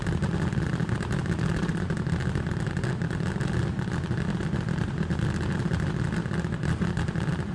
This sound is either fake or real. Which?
real